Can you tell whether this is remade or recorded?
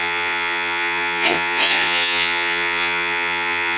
remade